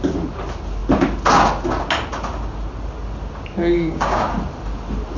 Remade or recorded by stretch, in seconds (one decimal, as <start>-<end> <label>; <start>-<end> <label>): 0.0-3.6 recorded; 3.6-4.3 remade; 4.3-5.2 recorded